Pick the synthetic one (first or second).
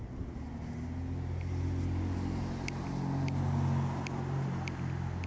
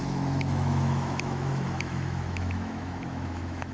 second